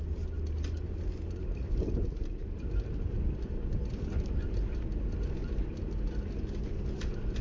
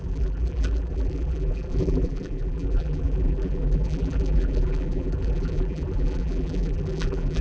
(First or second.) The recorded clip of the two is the first